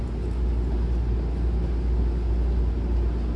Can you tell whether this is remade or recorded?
recorded